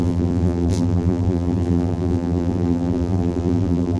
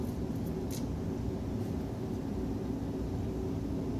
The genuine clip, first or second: second